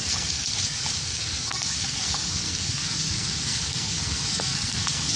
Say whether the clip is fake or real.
fake